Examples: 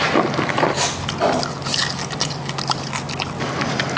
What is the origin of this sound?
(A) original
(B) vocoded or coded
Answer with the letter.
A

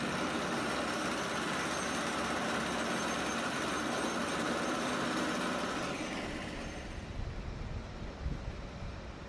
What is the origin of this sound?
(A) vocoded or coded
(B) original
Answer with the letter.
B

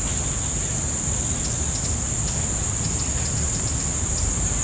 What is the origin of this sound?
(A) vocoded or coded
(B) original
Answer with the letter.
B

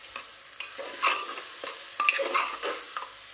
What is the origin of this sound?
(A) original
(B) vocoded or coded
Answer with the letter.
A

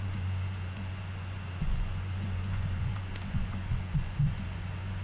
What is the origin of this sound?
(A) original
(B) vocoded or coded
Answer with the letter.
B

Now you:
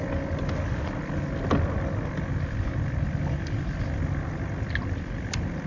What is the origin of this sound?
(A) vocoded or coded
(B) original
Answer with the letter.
B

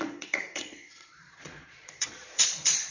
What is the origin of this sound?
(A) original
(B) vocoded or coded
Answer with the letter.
B